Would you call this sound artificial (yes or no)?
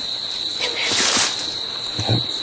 no